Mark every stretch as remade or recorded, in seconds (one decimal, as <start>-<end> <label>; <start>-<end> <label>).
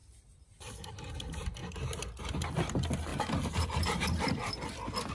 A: 0.0-3.1 recorded; 3.1-4.5 remade; 4.5-5.1 recorded